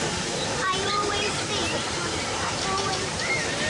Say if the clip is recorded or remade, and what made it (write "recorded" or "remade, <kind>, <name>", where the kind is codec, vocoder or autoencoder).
remade, vocoder, BigVGAN v2